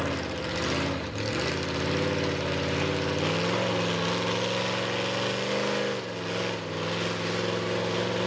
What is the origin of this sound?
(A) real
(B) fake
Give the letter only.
A